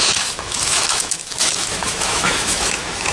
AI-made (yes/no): yes